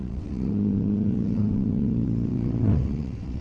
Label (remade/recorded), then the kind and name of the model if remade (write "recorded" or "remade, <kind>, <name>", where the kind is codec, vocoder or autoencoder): remade, vocoder, WaveNeXt